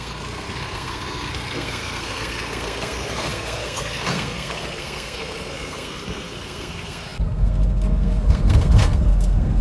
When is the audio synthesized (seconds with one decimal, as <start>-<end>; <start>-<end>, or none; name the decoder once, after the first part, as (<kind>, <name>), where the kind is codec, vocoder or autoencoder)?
0.0-9.6 (codec, SNAC)